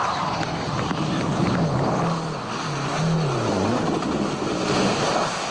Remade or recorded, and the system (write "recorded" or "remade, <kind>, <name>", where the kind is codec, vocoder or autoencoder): recorded